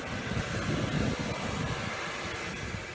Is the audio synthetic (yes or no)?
no